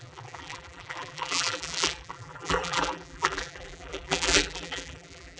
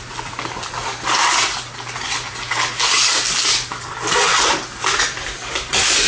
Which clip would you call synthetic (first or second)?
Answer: first